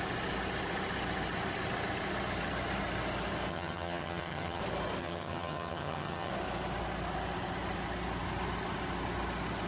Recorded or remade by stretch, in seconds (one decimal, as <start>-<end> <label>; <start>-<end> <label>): 0.0-3.5 recorded; 3.5-4.6 remade; 4.6-5.0 recorded; 5.0-6.3 remade; 6.3-9.7 recorded